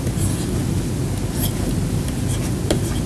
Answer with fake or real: real